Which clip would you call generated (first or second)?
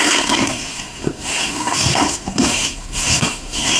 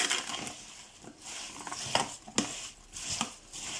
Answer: first